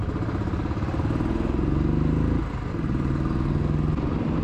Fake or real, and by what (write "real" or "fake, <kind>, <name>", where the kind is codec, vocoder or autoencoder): real